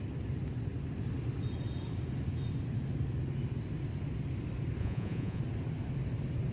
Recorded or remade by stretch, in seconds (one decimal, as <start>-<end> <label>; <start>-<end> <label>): 0.0-4.8 recorded; 4.8-5.4 remade; 5.4-6.5 recorded